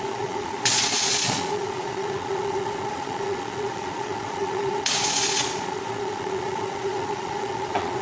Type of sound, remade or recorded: remade